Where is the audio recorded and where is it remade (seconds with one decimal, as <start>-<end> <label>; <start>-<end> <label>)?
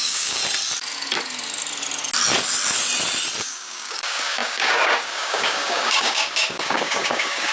0.0-0.4 remade; 0.4-3.4 recorded; 3.4-7.5 remade